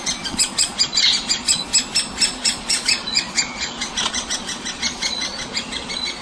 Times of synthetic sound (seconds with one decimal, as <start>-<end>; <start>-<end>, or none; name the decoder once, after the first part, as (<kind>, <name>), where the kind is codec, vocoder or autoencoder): 0.0-1.7 (vocoder, Vocos); 2.4-6.2